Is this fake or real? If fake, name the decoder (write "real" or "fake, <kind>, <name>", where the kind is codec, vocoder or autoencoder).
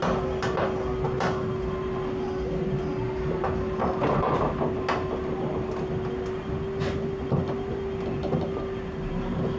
real